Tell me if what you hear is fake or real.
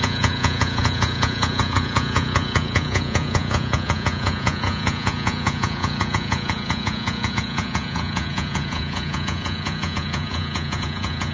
fake